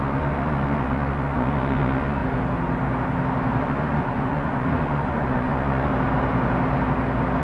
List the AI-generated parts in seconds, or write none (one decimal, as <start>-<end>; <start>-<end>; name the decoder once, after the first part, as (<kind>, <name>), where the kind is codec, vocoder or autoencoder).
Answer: 0.0-2.2 (vocoder, Vocos); 3.6-5.9